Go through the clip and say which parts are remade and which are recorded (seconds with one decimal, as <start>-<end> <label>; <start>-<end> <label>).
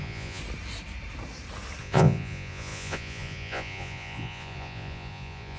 0.0-0.4 remade; 0.4-1.8 recorded; 1.8-5.6 remade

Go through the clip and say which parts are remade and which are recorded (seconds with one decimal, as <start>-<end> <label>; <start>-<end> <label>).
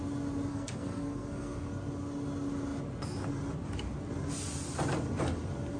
0.0-0.5 recorded; 0.5-1.7 remade; 1.7-5.8 recorded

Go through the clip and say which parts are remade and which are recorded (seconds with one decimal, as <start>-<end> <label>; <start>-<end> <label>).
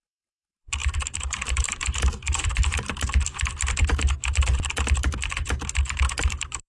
0.0-2.5 remade; 2.5-6.0 recorded; 6.0-6.7 remade